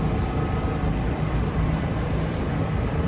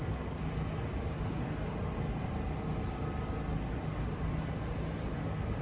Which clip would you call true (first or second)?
second